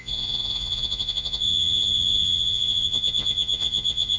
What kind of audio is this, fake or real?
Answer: fake